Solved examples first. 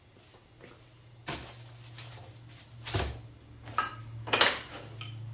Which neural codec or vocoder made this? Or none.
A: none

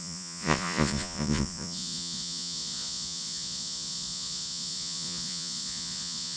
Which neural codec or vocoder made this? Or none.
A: vocoder, Vocos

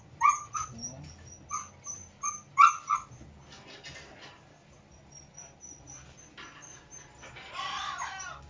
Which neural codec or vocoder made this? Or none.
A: none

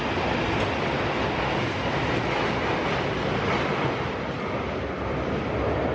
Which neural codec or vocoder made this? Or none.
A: none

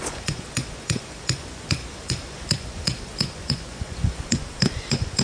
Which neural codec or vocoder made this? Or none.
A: vocoder, Vocos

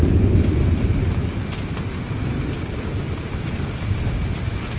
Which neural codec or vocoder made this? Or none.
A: none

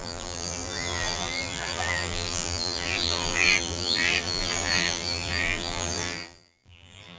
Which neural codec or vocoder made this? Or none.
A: vocoder, BigVGAN v2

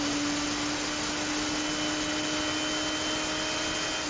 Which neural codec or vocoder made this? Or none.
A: none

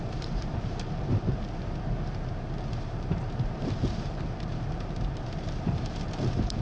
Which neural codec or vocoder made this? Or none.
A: vocoder, BigVGAN v2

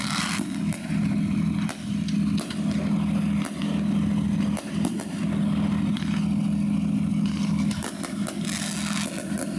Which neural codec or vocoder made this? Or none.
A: none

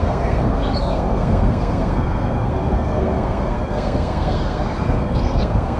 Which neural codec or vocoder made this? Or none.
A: codec, SNAC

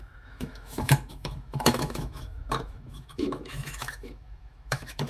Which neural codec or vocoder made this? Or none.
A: autoencoder, DAC-VAE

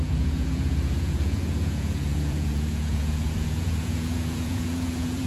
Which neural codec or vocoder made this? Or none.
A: vocoder, Vocos